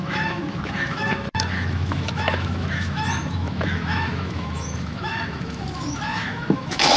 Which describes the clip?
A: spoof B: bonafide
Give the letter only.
A